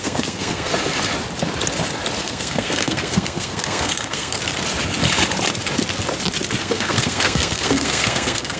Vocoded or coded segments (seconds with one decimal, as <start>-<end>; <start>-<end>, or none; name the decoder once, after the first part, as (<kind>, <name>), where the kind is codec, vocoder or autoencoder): 0.0-0.7 (codec, SNAC); 2.2-4.4; 6.6-8.6

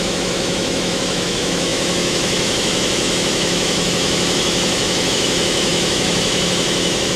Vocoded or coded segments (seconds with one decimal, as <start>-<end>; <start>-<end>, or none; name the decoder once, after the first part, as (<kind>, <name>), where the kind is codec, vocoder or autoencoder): 0.0-7.2 (autoencoder, DAC-VAE)

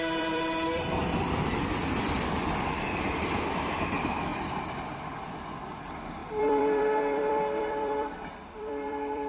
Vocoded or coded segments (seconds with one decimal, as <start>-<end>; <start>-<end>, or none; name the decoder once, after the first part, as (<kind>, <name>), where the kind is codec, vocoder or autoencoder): 0.0-1.0 (vocoder, BigVGAN v2); 2.0-4.3; 5.8-9.3

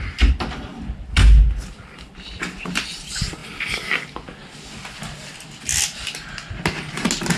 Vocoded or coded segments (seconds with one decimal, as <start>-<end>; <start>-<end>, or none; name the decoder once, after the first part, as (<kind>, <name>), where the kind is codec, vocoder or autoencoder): none

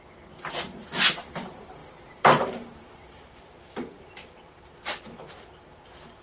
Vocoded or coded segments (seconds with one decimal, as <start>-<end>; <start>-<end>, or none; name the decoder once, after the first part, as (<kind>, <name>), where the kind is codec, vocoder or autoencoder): 1.8-5.5 (vocoder, BigVGAN v2)

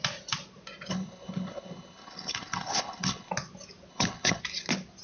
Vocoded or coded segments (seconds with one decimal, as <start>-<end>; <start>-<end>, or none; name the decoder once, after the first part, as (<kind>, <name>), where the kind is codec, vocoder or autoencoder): 0.9-3.3 (codec, HILCodec); 3.9-4.4

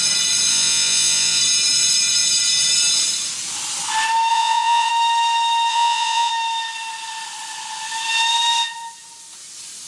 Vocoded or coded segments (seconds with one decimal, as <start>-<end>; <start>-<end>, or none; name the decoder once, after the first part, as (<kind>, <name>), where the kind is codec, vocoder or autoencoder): 0.5-1.4 (vocoder, Vocos); 4.3-4.9; 5.7-6.3